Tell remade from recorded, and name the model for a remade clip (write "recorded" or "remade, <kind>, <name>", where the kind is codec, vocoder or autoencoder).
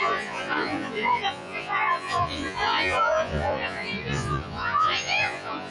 remade, vocoder, Vocos